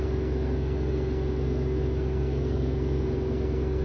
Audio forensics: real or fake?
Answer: fake